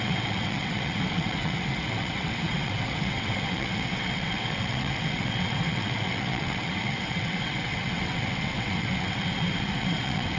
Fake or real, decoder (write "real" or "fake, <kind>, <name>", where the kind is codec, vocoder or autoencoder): fake, vocoder, WaveNeXt